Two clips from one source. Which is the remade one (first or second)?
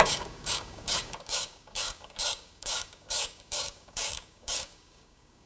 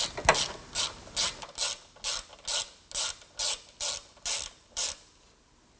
first